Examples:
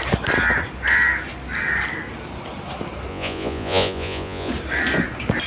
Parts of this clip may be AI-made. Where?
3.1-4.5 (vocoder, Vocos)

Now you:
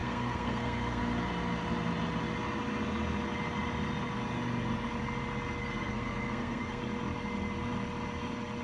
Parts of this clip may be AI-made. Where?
0.0-1.0 (codec, SNAC); 5.6-6.8